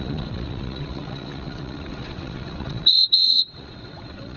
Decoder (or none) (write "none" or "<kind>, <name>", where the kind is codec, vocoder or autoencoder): vocoder, WaveNeXt